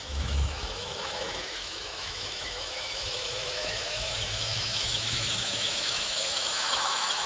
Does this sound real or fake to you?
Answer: fake